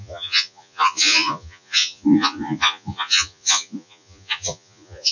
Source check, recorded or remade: remade